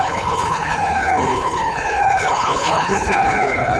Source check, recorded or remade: remade